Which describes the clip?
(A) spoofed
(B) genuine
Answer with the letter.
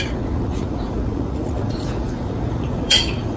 A